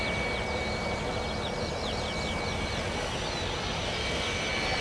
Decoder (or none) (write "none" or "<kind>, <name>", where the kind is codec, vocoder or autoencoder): none